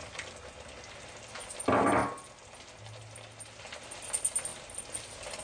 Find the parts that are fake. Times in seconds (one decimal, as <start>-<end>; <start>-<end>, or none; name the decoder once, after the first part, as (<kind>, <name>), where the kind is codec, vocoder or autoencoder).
none